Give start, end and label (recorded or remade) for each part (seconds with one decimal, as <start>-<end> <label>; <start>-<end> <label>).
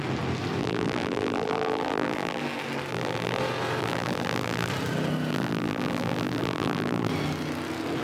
0.0-0.6 recorded; 0.6-2.4 remade; 2.4-2.9 recorded; 2.9-3.4 remade; 3.4-3.8 recorded; 3.8-4.7 remade; 4.7-5.3 recorded; 5.3-7.1 remade; 7.1-8.0 recorded